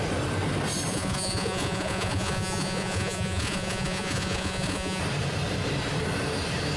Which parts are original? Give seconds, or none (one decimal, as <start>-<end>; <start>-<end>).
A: 0.0-0.9; 5.0-6.8